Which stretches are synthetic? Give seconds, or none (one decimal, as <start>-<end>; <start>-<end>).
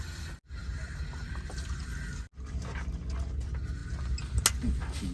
none